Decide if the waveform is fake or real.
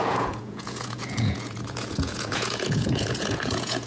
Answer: fake